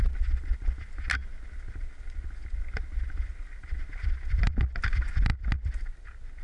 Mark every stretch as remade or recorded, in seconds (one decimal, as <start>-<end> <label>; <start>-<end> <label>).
0.0-6.4 recorded

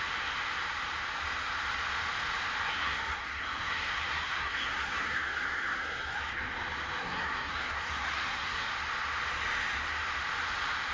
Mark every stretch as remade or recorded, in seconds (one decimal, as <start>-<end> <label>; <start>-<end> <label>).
0.0-2.6 recorded; 2.6-6.2 remade; 6.2-7.0 recorded; 7.0-8.7 remade; 8.7-10.9 recorded